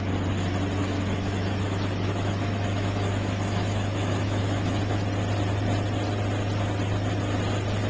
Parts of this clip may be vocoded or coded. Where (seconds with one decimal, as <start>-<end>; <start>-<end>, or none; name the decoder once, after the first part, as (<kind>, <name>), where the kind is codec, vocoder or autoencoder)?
0.8-4.8 (autoencoder, DAC-VAE)